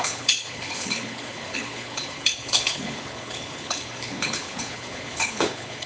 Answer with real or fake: fake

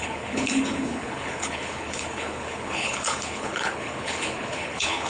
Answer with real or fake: fake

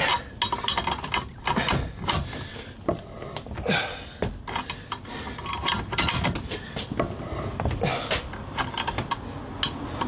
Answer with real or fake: real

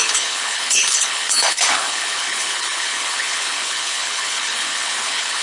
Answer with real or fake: fake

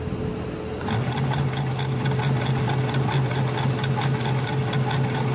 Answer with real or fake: real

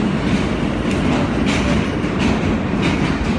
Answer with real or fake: real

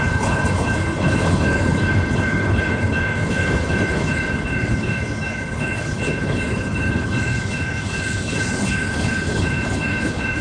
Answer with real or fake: fake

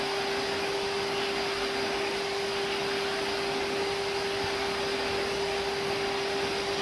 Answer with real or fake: real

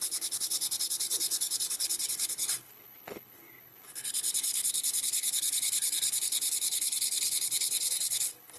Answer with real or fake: fake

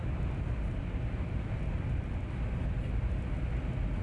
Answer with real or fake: real